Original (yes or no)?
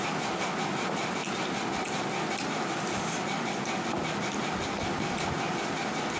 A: yes